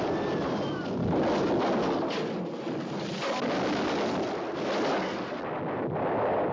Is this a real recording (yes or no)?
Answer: yes